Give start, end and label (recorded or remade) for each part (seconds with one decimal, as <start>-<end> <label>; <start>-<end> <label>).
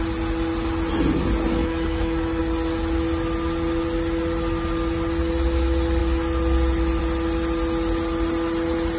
0.0-1.6 recorded; 1.6-2.4 remade; 2.4-9.0 recorded